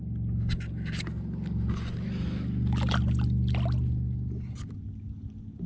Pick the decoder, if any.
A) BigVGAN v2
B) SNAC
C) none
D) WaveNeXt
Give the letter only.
C